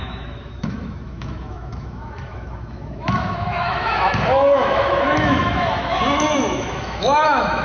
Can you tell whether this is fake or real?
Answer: fake